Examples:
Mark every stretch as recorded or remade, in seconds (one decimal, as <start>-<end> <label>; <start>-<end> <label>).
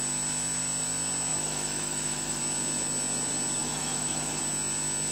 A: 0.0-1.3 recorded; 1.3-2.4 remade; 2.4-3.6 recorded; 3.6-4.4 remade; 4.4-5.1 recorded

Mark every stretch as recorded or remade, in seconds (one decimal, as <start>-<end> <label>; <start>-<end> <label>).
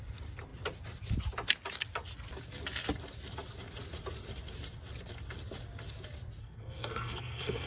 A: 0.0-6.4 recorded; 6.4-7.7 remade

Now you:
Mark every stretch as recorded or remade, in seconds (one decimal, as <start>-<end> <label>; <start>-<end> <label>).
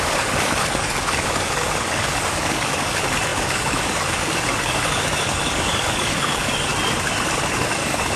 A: 0.0-6.7 remade; 6.7-7.6 recorded; 7.6-8.2 remade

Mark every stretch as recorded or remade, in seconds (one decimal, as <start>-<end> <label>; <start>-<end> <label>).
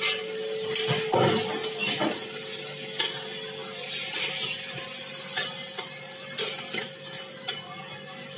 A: 0.0-8.4 recorded